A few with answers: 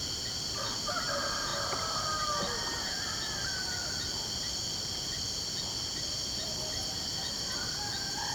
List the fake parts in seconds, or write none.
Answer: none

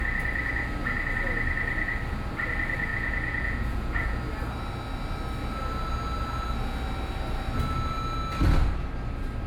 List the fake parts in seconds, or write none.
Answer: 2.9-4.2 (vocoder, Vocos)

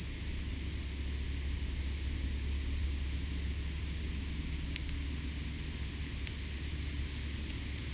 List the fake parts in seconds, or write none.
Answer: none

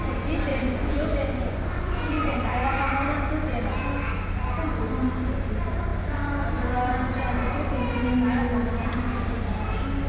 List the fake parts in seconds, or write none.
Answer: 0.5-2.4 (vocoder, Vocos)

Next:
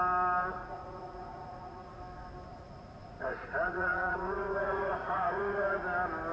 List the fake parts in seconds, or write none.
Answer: 0.6-2.0 (vocoder, Vocos); 2.5-5.8